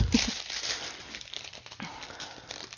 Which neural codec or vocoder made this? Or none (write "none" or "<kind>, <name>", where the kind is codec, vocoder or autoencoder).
none